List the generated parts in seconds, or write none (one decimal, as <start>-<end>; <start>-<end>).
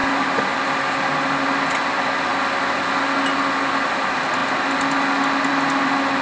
none